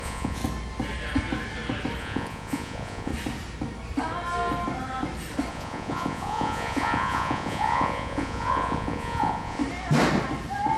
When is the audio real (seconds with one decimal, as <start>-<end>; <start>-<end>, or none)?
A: 0.4-2.0; 3.1-5.5; 9.6-10.8